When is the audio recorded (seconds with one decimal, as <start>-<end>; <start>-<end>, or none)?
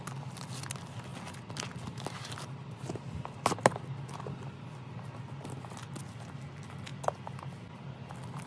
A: 0.0-8.5